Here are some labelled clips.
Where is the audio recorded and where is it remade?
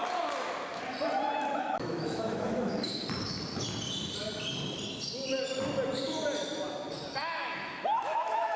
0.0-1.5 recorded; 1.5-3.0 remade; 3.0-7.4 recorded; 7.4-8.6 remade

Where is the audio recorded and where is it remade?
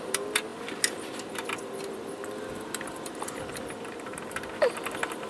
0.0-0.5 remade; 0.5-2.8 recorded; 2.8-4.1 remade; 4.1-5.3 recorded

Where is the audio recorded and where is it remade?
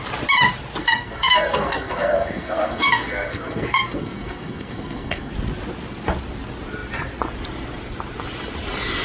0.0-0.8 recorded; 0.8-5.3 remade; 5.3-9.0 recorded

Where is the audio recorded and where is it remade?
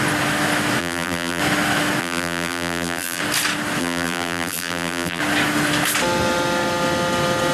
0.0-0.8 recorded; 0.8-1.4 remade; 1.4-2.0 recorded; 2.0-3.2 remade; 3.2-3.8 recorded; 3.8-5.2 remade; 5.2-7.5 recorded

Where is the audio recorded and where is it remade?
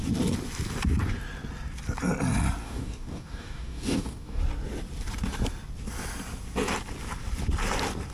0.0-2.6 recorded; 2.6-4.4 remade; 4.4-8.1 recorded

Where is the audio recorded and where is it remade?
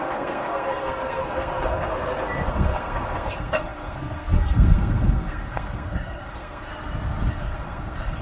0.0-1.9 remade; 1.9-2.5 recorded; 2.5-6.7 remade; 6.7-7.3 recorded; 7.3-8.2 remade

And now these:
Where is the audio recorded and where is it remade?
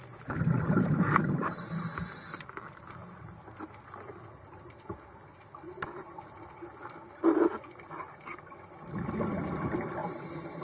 0.0-10.6 recorded